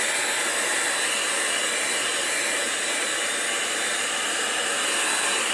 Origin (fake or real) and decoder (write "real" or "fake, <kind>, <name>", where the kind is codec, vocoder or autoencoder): real